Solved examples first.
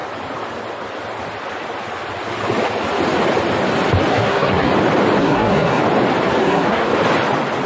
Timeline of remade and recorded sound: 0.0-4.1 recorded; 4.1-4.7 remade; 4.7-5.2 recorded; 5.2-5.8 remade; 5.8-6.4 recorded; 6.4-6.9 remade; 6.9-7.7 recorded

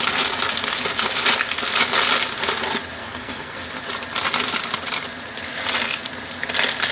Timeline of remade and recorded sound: 0.0-3.0 recorded; 3.0-3.6 remade; 3.6-6.9 recorded

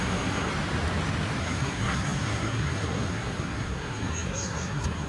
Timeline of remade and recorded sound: 0.0-0.5 remade; 0.5-1.4 recorded; 1.4-5.1 remade

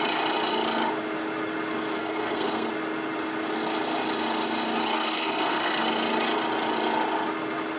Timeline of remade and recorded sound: 0.0-2.0 recorded; 2.0-2.7 remade; 2.7-4.9 recorded; 4.9-5.9 remade; 5.9-7.8 recorded

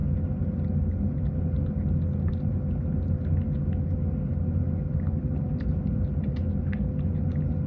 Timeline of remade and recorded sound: 0.0-7.7 recorded

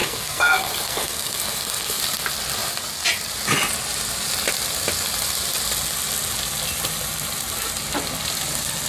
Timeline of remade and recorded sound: 0.0-2.0 remade; 2.0-8.9 recorded

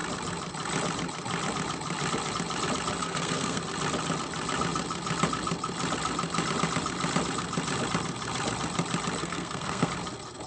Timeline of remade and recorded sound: 0.0-3.0 recorded; 3.0-3.6 remade; 3.6-9.2 recorded; 9.2-9.9 remade; 9.9-10.5 recorded